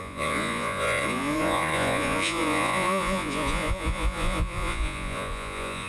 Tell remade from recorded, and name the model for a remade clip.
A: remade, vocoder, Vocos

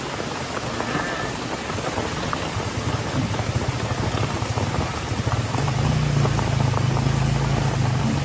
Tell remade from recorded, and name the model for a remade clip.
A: recorded